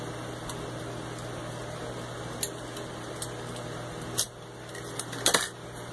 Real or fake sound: real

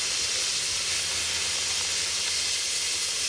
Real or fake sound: real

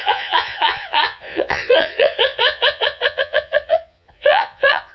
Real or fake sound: fake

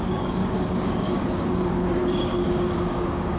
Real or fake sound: fake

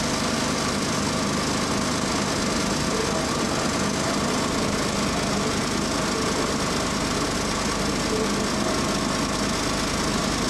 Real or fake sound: real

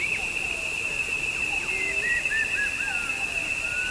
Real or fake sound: fake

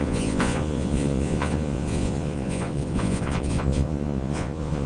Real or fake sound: fake